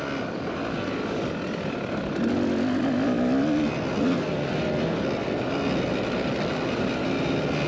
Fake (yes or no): no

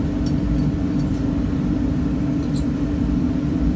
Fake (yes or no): yes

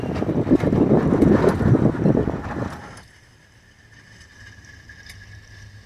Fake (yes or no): no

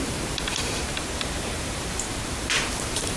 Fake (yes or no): yes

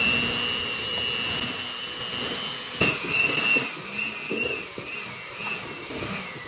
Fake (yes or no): no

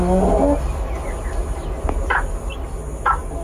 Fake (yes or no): no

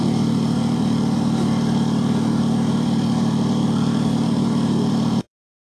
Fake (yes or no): yes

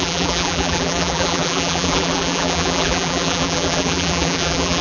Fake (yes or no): yes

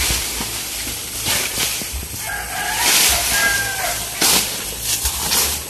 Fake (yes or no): no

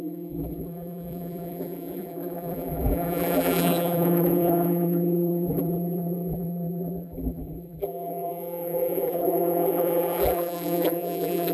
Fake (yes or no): yes